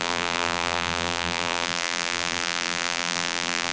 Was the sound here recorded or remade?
remade